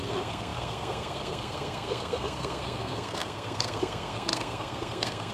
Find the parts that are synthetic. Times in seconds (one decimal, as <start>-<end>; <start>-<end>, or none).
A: 0.0-5.3